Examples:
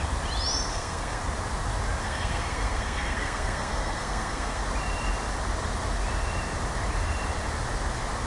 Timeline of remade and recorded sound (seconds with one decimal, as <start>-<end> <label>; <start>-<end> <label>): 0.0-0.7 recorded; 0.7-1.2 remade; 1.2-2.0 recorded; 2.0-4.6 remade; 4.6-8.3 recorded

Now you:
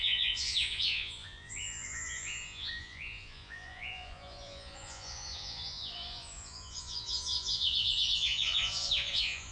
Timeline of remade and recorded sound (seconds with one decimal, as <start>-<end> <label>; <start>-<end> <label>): 0.0-9.5 remade

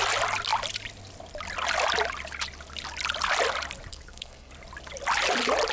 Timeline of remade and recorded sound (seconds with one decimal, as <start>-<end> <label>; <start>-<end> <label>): 0.0-3.9 recorded; 3.9-4.5 remade; 4.5-5.7 recorded